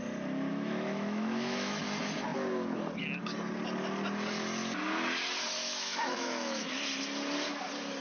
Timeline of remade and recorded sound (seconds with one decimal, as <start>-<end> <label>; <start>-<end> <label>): 0.0-0.5 recorded; 0.5-1.8 remade; 1.8-5.6 recorded; 5.6-6.7 remade; 6.7-8.0 recorded